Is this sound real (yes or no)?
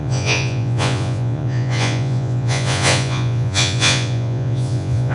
no